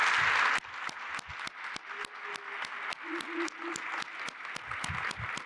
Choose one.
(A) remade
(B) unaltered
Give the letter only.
B